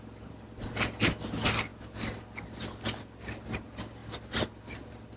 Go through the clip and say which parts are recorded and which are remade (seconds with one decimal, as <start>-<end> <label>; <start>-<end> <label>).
0.0-5.2 recorded